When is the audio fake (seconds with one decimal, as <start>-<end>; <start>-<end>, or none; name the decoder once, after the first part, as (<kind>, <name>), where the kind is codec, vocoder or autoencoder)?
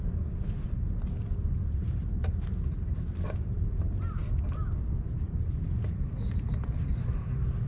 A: 1.8-3.9 (vocoder, BigVGAN v2)